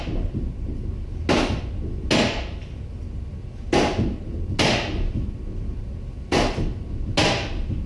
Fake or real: real